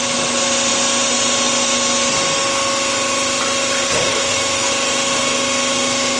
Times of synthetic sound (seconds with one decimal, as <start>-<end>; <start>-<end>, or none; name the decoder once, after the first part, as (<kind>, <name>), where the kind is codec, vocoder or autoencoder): 4.1-4.7 (autoencoder, DAC-VAE)